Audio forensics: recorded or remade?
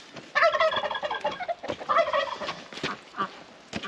recorded